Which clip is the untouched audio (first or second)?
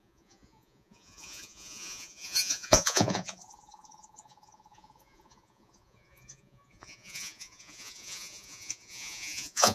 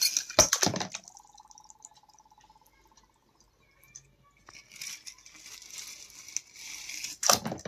second